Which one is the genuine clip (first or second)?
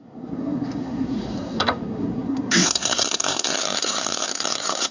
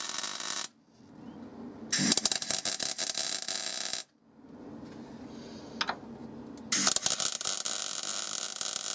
second